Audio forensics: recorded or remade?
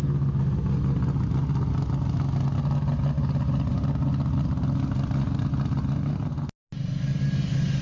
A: recorded